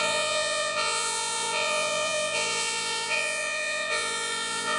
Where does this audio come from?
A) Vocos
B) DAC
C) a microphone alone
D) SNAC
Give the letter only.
A